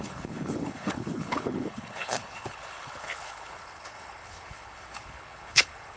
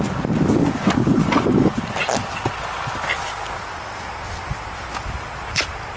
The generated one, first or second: first